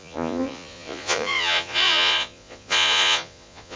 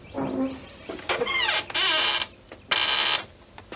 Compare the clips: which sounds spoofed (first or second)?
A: first